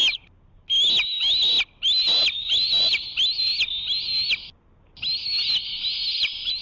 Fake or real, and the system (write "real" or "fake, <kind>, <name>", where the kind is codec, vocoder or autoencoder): real